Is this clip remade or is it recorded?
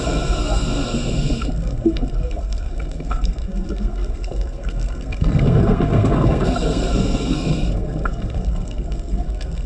remade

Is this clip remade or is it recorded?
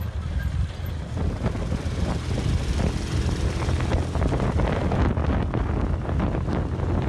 recorded